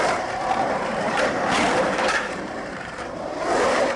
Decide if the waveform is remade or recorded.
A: remade